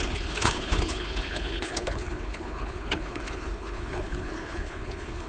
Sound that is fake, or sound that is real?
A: fake